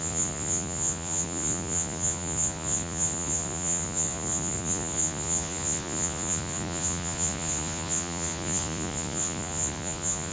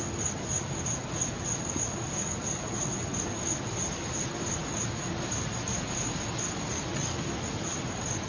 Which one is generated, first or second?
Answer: first